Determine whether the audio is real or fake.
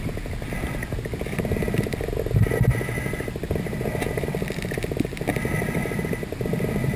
real